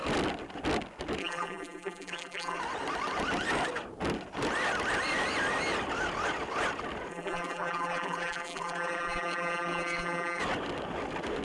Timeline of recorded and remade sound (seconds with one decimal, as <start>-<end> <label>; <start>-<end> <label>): 0.0-1.2 recorded; 1.2-2.6 remade; 2.6-7.1 recorded; 7.1-10.4 remade; 10.4-11.4 recorded